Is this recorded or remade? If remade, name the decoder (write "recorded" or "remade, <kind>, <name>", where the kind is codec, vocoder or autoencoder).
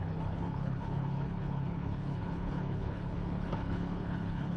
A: remade, codec, HILCodec